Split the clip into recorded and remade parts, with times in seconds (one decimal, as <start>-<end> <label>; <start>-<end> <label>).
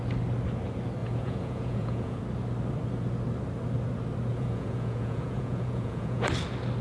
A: 0.0-1.0 recorded; 1.0-2.2 remade; 2.2-4.3 recorded; 4.3-6.3 remade; 6.3-6.8 recorded